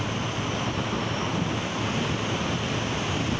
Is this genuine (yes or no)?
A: yes